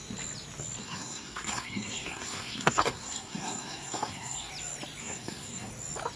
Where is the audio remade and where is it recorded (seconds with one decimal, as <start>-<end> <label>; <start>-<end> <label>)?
0.0-0.8 recorded; 0.8-4.5 remade; 4.5-5.0 recorded; 5.0-5.7 remade; 5.7-6.2 recorded